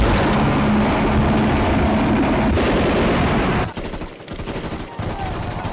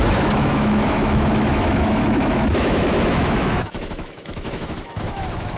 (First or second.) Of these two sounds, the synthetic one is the second